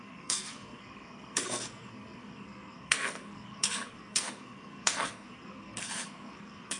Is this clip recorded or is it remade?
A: remade